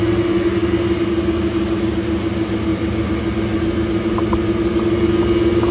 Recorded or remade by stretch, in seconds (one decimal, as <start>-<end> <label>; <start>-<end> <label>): 0.0-2.7 recorded; 2.7-3.6 remade; 3.6-5.7 recorded